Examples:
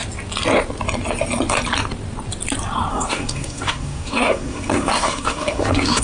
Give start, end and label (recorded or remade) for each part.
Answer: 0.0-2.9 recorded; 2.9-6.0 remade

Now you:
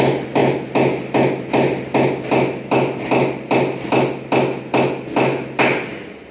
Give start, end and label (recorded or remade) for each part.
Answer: 0.0-6.3 recorded

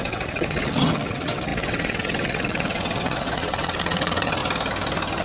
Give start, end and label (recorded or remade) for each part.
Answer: 0.0-4.4 remade; 4.4-5.2 recorded

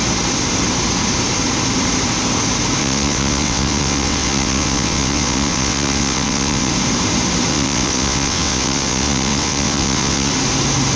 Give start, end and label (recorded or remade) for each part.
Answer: 0.0-2.8 recorded; 2.8-6.7 remade; 6.7-7.5 recorded; 7.5-10.3 remade; 10.3-11.0 recorded

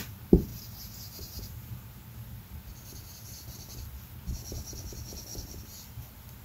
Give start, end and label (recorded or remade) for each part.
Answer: 0.0-5.3 recorded; 5.3-5.9 remade; 5.9-6.4 recorded

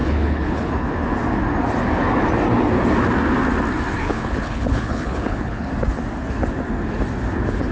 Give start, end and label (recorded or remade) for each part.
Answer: 0.0-0.7 remade; 0.7-4.0 recorded; 4.0-5.7 remade; 5.7-7.7 recorded